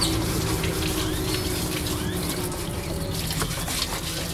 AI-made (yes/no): no